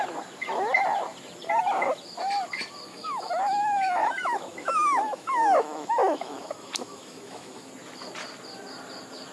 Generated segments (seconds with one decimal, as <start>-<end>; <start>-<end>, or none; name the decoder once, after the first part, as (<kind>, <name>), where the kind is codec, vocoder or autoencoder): 2.9-7.7 (autoencoder, DAC-VAE)